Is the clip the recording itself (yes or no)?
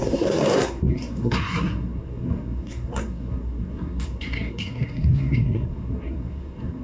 no